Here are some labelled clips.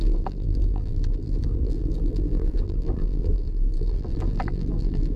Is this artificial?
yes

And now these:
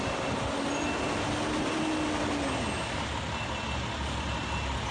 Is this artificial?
no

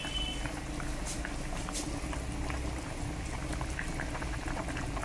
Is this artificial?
no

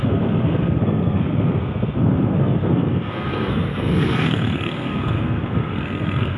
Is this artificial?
yes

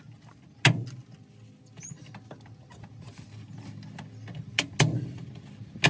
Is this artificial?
no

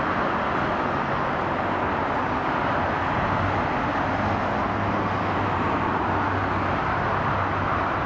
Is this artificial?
no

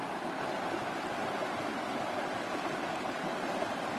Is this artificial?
no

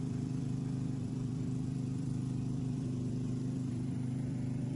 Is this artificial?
yes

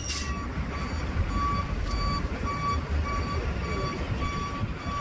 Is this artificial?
no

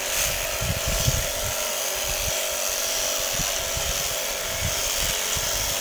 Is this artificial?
no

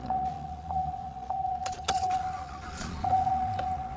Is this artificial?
yes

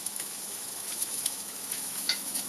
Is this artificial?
yes